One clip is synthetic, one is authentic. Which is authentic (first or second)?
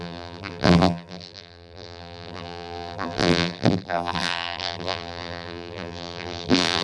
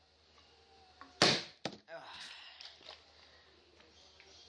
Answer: second